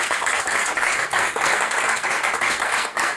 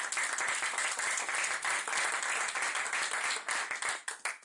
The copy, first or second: first